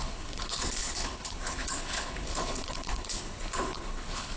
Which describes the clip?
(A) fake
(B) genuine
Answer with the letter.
A